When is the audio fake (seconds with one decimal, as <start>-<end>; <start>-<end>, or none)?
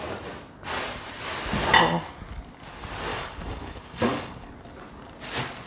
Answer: 3.1-4.5